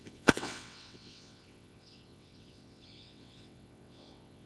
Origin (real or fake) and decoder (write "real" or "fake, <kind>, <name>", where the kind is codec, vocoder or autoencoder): fake, vocoder, WaveNeXt